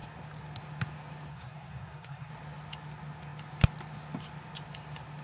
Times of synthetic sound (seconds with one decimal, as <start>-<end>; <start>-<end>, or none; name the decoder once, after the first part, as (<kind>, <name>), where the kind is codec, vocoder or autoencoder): 1.3-2.3 (codec, SNAC)